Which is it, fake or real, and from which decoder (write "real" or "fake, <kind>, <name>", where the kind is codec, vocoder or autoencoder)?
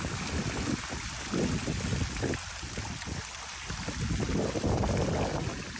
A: real